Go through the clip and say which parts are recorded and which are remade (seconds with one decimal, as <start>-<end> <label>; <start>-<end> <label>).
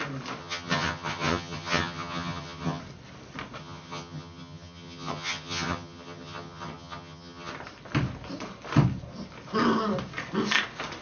0.0-0.4 recorded; 0.4-2.8 remade; 2.8-3.6 recorded; 3.6-7.5 remade; 7.5-11.0 recorded